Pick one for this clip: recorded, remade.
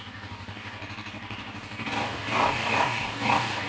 remade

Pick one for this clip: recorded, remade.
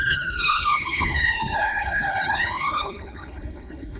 remade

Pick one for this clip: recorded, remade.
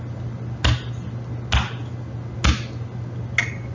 recorded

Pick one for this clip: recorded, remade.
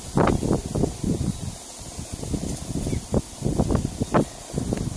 recorded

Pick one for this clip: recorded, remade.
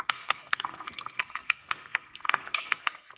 remade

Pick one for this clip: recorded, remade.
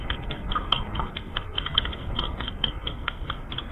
remade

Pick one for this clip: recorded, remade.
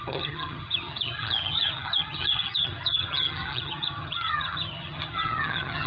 remade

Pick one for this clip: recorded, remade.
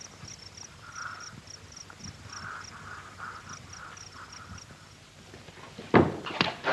recorded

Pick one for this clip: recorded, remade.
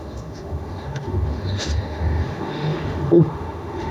remade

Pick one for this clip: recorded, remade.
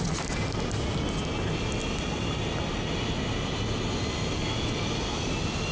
recorded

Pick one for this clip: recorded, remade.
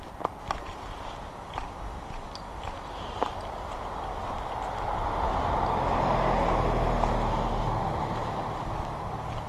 recorded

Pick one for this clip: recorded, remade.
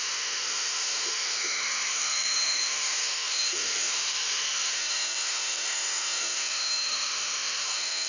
remade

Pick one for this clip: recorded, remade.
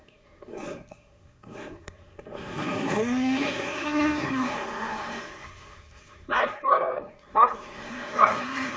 remade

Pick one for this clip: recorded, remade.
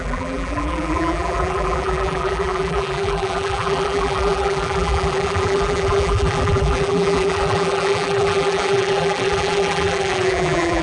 remade